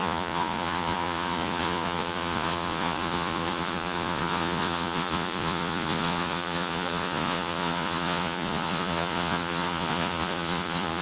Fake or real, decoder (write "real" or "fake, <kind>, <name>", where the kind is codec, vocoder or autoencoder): fake, vocoder, Vocos